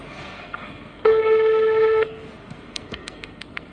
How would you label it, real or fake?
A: fake